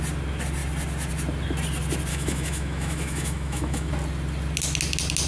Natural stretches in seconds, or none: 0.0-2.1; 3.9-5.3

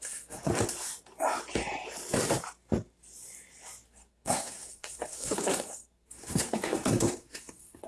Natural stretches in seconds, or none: 0.5-3.9

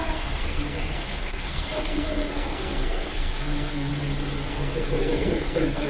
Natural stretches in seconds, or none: 3.9-4.5